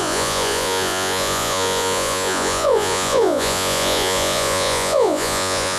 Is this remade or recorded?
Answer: remade